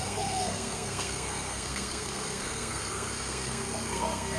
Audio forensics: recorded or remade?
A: remade